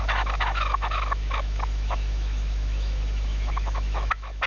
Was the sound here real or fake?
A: fake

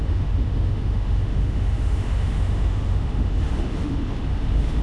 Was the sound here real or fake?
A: fake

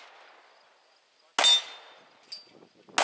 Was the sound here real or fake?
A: real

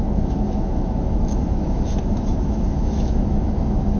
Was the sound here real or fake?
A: fake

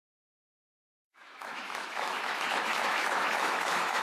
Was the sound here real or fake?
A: fake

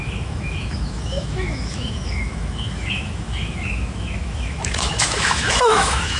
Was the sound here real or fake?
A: fake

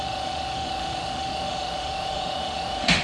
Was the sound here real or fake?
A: fake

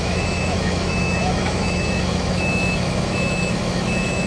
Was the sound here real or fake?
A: fake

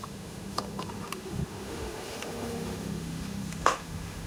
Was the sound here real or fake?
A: fake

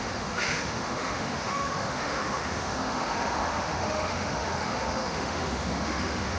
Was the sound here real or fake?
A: fake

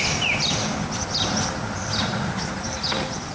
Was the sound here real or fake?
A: real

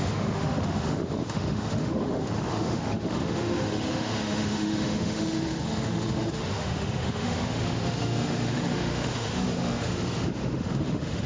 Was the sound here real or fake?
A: fake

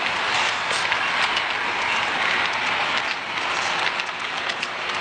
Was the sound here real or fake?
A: real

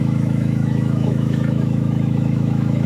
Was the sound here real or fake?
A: fake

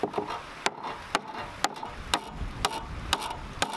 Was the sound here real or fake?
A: real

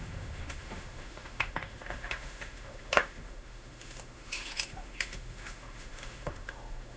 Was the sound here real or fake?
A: fake